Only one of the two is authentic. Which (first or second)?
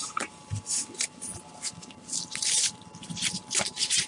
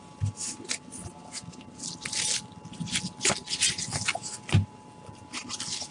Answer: second